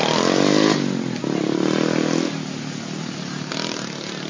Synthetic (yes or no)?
no